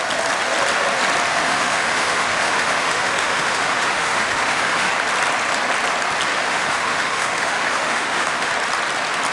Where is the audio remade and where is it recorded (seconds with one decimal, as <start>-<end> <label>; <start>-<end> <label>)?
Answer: 0.0-1.3 recorded; 1.3-4.9 remade; 4.9-6.3 recorded; 6.3-8.5 remade; 8.5-9.3 recorded